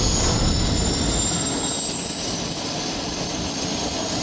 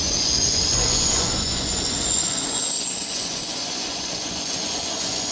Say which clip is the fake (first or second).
second